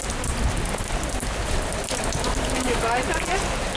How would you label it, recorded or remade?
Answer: recorded